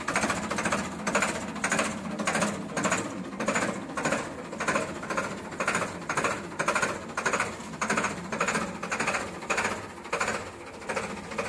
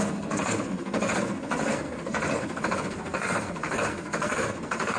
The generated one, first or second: second